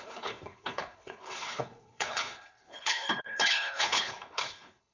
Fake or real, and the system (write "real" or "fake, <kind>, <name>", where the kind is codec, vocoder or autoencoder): fake, codec, HILCodec